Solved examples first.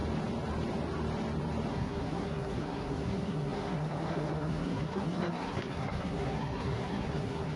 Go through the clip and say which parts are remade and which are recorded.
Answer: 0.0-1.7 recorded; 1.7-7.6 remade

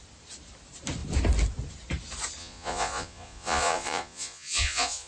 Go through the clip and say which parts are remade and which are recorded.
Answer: 0.0-2.4 recorded; 2.4-5.1 remade

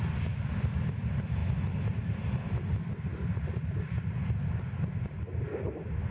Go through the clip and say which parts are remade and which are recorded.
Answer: 0.0-6.1 recorded

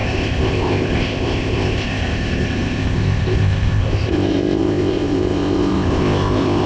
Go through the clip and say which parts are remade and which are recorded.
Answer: 0.0-6.7 remade